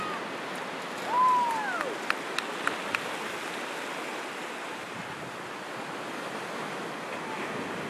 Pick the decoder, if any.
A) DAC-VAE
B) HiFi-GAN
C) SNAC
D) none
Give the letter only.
D